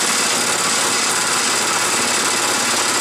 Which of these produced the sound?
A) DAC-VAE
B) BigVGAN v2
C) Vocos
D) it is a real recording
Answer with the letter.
D